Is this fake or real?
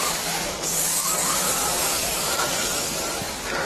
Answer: fake